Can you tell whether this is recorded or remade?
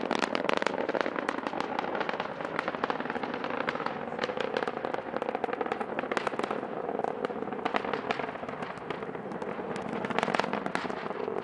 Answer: recorded